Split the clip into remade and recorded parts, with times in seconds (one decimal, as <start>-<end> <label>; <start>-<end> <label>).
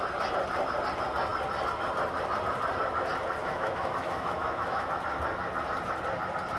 0.0-3.4 recorded; 3.4-4.9 remade; 4.9-6.6 recorded